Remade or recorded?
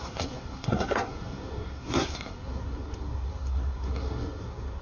remade